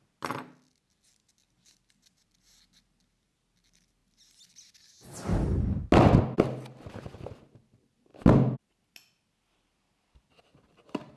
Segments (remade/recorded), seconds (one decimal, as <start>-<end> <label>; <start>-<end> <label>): 0.0-11.2 recorded